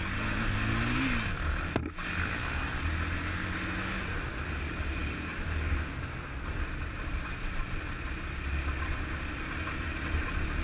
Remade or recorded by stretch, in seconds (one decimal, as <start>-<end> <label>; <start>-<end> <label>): 0.0-10.6 recorded